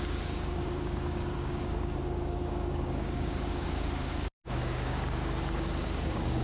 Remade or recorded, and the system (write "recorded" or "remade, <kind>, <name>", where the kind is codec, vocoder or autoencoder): remade, codec, DAC